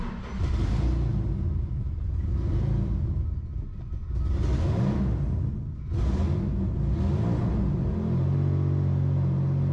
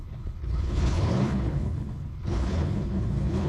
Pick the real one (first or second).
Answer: first